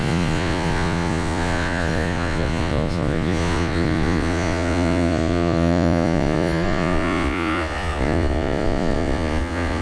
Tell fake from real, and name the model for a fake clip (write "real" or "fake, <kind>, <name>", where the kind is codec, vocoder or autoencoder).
fake, vocoder, Vocos